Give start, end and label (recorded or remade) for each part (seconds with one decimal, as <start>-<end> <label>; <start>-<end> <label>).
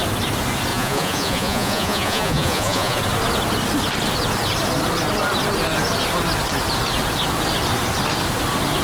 0.0-0.7 recorded; 0.7-3.0 remade; 3.0-8.8 recorded